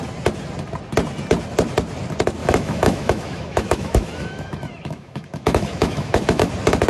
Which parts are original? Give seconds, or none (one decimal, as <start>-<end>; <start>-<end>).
0.0-2.4; 6.5-6.9